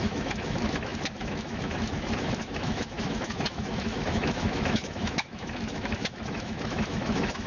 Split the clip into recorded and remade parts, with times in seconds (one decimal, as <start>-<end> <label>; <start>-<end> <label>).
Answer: 0.0-7.5 remade